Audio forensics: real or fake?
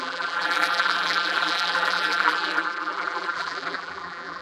fake